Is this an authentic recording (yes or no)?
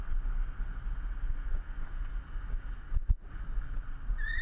yes